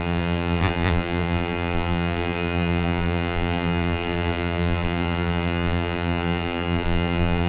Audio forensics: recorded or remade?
remade